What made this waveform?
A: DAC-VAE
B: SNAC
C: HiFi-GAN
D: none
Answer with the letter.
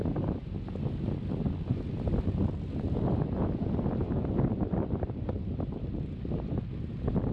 D